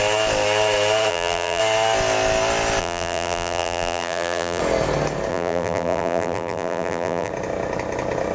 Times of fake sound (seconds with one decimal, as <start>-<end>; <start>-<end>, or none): 1.1-1.6; 2.8-4.6; 5.3-7.3